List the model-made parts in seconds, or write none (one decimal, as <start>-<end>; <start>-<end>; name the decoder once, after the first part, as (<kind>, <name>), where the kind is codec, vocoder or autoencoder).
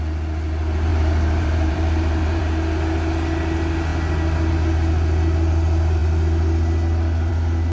0.9-2.4 (vocoder, BigVGAN v2)